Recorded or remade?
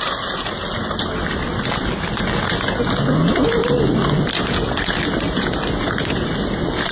recorded